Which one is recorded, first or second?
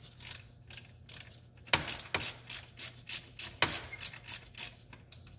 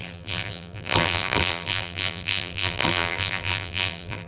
first